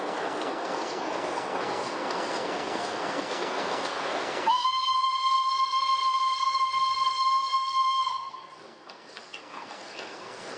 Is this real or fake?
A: fake